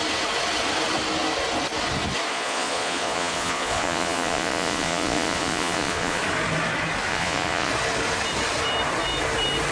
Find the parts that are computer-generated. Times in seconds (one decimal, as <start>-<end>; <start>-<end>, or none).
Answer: 2.3-6.2; 7.1-7.7